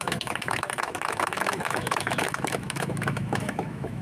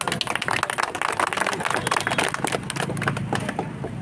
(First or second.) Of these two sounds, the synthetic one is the first